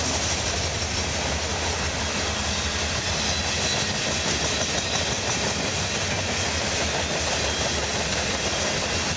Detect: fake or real real